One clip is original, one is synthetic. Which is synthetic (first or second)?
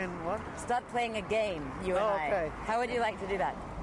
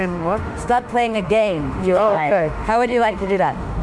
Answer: second